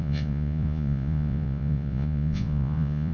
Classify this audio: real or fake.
fake